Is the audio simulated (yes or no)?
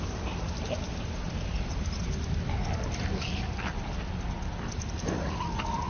no